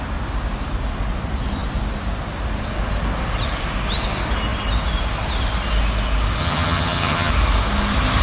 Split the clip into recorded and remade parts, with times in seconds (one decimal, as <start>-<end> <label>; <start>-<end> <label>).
0.0-6.4 recorded; 6.4-7.3 remade; 7.3-8.2 recorded